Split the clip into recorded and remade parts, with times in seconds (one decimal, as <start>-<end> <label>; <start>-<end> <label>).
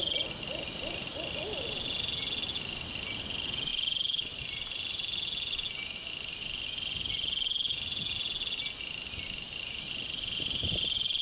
0.0-11.2 recorded